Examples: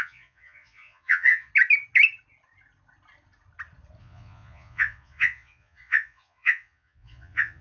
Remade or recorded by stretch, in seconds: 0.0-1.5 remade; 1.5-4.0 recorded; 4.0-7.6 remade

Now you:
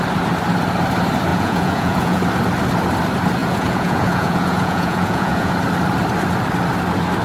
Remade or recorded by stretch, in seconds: 0.0-1.3 recorded; 1.3-2.2 remade; 2.2-3.4 recorded; 3.4-5.5 remade; 5.5-7.2 recorded

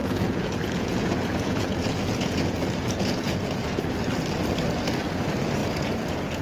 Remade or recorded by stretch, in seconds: 0.0-3.8 remade; 3.8-5.6 recorded; 5.6-6.4 remade

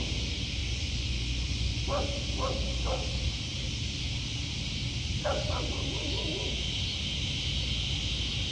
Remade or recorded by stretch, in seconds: 0.0-0.6 recorded; 0.6-1.8 remade; 1.8-8.5 recorded